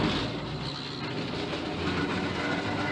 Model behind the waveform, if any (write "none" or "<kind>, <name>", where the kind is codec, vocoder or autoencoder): none